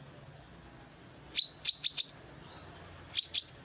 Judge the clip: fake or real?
real